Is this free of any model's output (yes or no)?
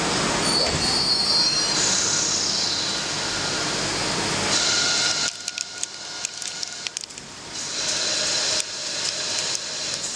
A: yes